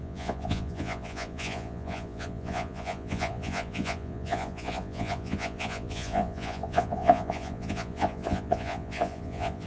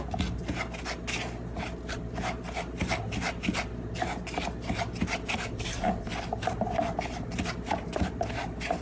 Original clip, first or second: second